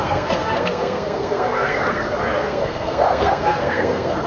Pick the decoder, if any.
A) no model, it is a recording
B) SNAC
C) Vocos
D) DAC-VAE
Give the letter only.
B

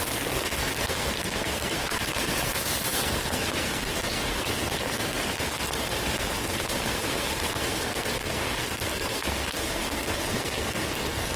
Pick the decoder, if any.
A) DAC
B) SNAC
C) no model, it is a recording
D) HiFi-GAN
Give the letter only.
B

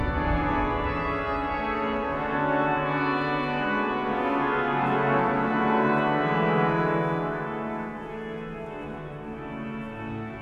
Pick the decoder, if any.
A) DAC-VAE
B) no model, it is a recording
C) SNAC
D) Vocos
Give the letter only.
B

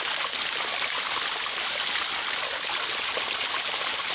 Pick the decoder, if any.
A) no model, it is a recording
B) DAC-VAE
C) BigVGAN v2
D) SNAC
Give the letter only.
A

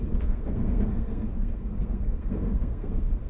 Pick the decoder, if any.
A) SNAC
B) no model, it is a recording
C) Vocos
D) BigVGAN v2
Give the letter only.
A